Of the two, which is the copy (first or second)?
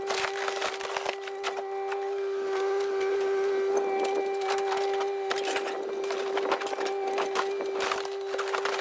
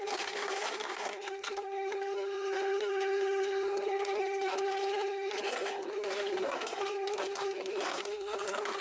second